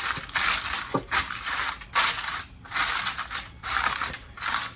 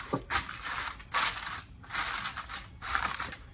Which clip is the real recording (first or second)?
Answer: first